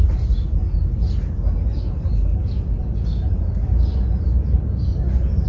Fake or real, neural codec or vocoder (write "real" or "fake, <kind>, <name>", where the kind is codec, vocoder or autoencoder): real